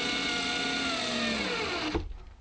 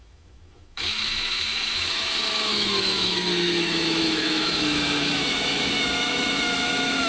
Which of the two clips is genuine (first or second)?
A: first